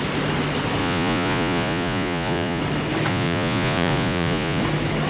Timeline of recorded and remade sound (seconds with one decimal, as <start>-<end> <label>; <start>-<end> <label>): 0.0-0.8 recorded; 0.8-2.6 remade; 2.6-3.1 recorded; 3.1-4.6 remade; 4.6-5.1 recorded

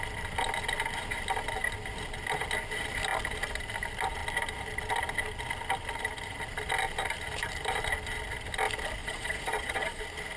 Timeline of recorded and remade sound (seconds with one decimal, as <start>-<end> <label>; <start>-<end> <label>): 0.0-9.0 recorded; 9.0-10.0 remade; 10.0-10.4 recorded